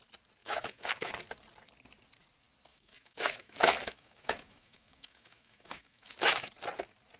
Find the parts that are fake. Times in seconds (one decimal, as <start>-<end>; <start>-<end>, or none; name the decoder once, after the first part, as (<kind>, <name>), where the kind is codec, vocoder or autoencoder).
0.4-1.1 (autoencoder, DAC-VAE); 2.7-6.5